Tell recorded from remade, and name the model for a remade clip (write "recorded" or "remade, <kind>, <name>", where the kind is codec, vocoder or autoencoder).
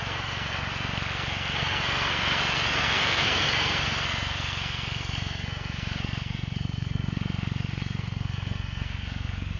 remade, codec, SNAC